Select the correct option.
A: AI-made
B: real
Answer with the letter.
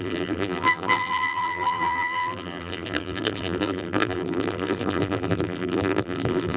A